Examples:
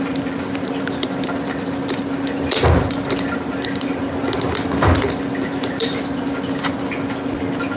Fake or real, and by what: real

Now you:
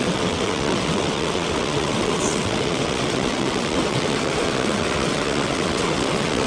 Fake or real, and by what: fake, vocoder, WaveNeXt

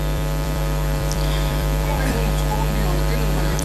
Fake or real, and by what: fake, vocoder, BigVGAN v2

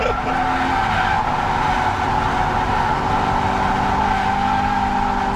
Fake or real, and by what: real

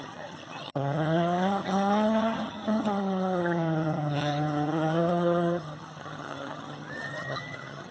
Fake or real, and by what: fake, vocoder, HiFi-GAN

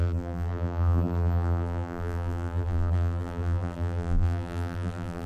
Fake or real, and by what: fake, vocoder, BigVGAN v2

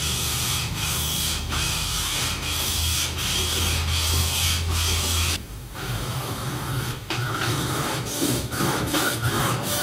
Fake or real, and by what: fake, codec, DAC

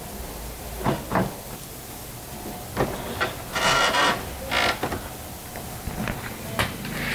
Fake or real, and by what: real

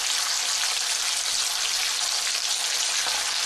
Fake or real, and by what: real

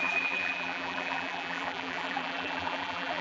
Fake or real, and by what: fake, vocoder, BigVGAN v2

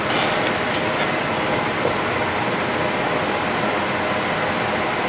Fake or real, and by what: real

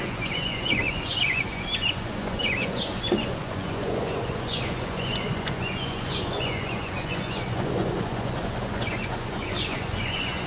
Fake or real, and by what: fake, vocoder, Vocos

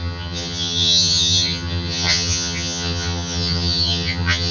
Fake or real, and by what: fake, vocoder, HiFi-GAN